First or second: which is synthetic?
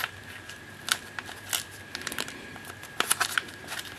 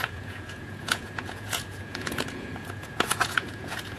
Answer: second